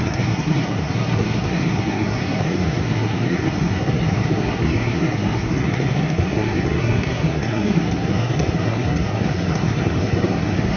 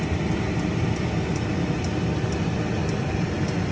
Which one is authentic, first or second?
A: second